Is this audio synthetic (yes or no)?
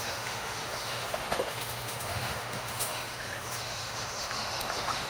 yes